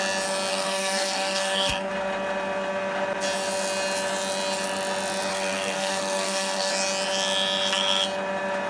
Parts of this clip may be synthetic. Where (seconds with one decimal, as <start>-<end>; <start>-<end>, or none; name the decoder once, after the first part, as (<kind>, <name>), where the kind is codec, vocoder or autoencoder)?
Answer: 0.5-1.9 (codec, SNAC); 5.3-6.7